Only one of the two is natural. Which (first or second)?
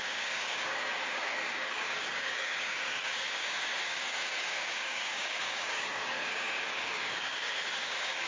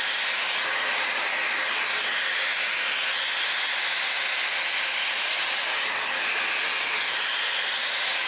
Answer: second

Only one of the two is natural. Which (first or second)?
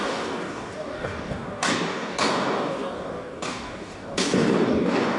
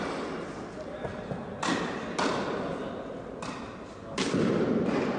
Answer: second